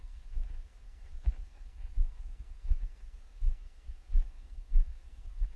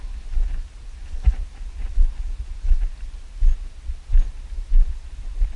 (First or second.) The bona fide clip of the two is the second